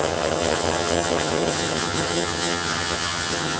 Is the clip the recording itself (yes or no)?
no